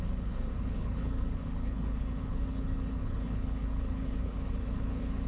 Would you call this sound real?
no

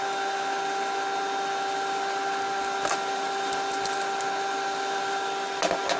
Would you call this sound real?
yes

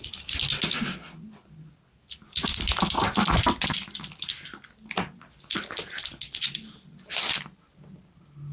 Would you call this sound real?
yes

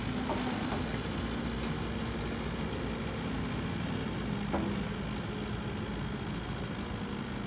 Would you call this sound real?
yes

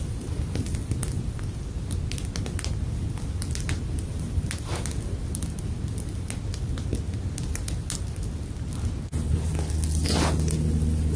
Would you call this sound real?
yes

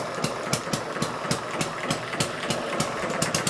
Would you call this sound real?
yes